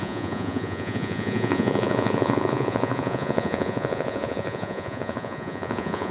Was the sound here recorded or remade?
remade